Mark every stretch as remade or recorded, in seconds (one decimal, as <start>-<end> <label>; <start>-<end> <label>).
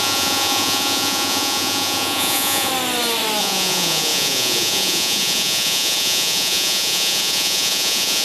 0.0-2.7 remade; 2.7-3.4 recorded; 3.4-8.2 remade